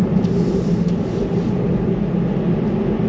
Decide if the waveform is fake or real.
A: real